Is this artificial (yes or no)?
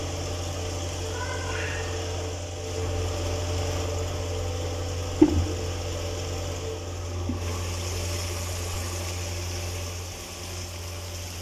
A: no